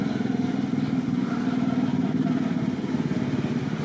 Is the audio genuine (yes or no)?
yes